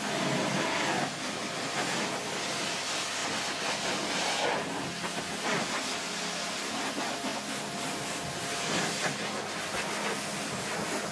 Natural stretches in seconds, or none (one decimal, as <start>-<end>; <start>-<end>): 0.0-11.1